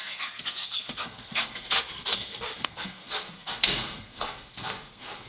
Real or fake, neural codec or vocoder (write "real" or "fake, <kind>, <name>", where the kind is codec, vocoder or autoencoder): fake, codec, SNAC